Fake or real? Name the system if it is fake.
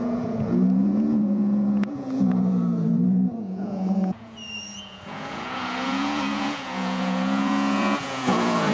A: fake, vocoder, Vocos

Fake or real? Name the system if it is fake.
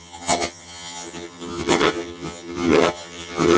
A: fake, vocoder, HiFi-GAN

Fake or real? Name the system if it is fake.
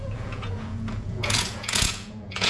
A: fake, vocoder, Vocos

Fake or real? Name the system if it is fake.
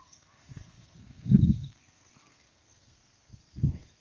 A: fake, codec, SNAC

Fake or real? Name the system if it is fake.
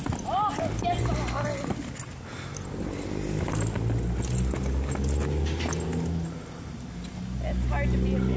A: real